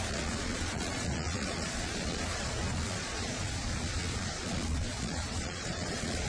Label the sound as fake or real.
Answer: fake